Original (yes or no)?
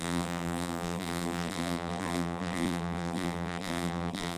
no